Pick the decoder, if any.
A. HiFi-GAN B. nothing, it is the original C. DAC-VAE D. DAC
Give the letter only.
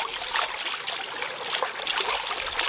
B